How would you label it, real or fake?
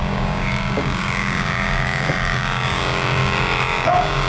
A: fake